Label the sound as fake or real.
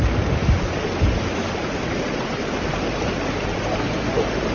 real